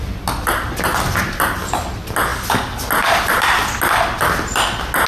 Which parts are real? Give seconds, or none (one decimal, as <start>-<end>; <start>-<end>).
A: 0.0-5.1